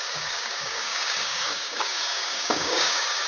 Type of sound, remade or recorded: remade